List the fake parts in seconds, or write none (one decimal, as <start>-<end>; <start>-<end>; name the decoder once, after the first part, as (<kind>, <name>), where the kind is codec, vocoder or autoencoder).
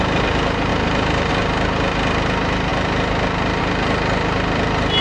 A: 0.7-1.3 (vocoder, BigVGAN v2)